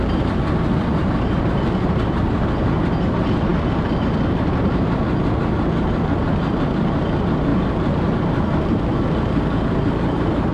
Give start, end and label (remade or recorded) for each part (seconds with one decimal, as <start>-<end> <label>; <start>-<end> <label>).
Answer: 0.0-10.5 recorded